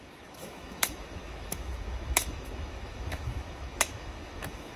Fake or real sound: fake